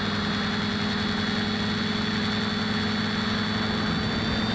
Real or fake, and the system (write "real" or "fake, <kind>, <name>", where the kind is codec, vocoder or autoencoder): real